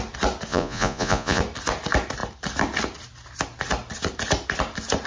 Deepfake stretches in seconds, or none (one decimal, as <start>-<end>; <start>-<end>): 0.5-1.4